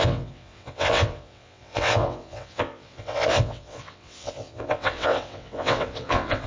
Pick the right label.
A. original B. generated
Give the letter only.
B